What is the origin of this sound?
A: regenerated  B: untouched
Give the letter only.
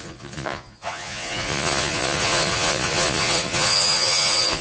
A